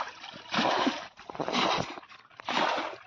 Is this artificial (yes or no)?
yes